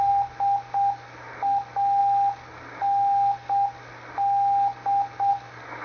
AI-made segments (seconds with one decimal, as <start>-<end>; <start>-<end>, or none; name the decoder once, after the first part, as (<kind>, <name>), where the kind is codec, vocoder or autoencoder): none